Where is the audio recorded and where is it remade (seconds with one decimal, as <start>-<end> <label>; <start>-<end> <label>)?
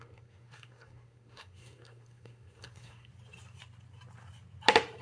0.0-3.1 remade; 3.1-5.0 recorded